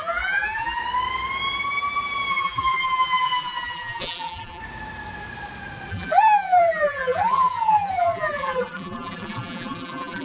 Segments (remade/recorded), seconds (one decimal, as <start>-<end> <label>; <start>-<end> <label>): 0.0-0.8 remade; 0.8-2.3 recorded; 2.3-4.6 remade; 4.6-5.9 recorded; 5.9-10.2 remade